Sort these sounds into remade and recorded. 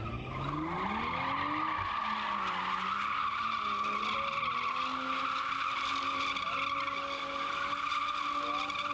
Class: recorded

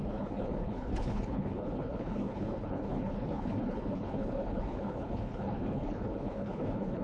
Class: remade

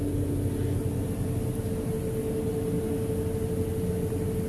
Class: recorded